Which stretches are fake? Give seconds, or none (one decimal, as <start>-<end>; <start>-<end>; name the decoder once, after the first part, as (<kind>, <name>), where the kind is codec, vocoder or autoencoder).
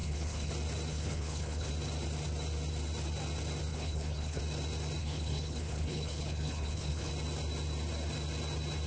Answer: 0.0-0.5 (codec, HILCodec); 0.9-1.7; 3.7-4.4; 5.0-7.1